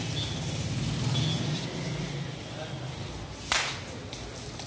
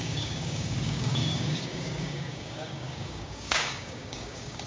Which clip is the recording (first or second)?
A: first